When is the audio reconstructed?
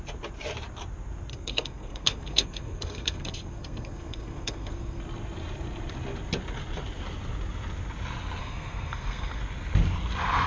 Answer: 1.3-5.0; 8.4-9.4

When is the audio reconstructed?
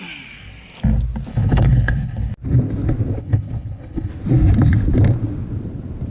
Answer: 1.3-2.3; 3.2-4.1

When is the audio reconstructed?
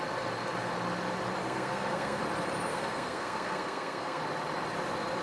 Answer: 1.4-2.2; 2.7-4.2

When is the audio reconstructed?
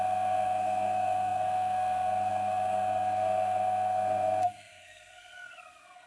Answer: 0.0-6.1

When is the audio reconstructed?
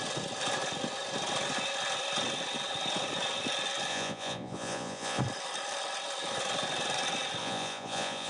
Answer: 3.9-5.2; 7.4-8.3